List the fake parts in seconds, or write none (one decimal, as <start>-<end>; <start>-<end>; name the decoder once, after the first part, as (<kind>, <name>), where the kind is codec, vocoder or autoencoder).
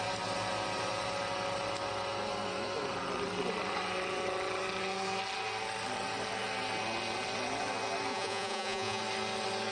8.1-9.0 (vocoder, Vocos)